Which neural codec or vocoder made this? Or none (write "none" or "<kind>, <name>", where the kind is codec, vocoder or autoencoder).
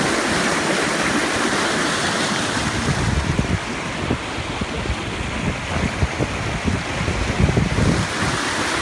none